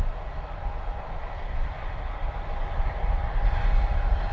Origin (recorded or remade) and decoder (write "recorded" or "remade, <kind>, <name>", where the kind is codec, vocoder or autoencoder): recorded